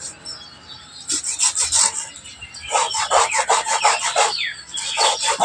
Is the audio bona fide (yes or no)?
yes